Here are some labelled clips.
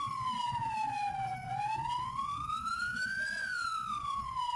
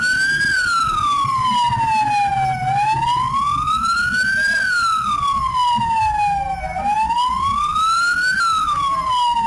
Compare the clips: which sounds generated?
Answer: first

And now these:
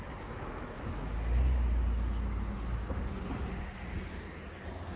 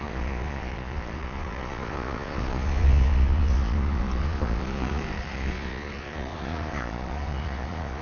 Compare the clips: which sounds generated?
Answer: second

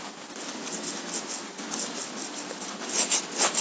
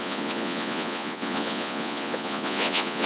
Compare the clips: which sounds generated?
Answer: second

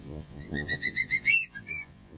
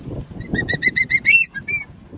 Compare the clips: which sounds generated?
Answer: first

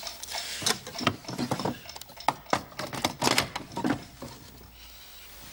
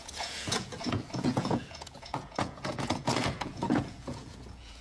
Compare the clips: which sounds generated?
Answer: second